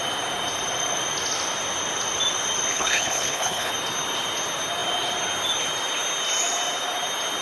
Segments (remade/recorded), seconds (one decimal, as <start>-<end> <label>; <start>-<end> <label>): 0.0-2.7 recorded; 2.7-3.7 remade; 3.7-7.4 recorded